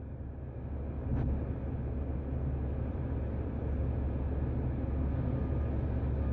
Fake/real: real